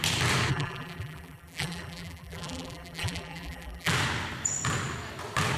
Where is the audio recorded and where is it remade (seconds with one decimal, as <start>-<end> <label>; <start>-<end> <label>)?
0.0-0.5 recorded; 0.5-3.9 remade; 3.9-5.6 recorded